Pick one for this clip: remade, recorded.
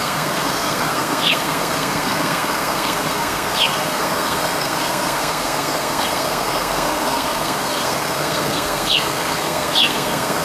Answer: remade